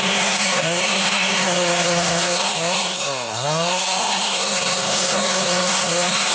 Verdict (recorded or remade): remade